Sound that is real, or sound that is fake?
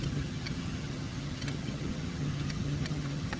fake